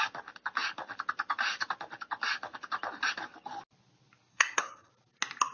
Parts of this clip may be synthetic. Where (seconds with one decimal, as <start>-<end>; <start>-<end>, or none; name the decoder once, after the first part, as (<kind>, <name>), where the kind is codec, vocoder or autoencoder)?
4.3-4.9 (codec, SNAC)